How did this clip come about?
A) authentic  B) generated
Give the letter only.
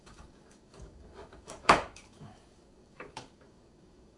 B